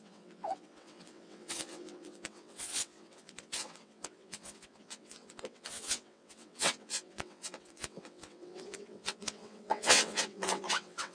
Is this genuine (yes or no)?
no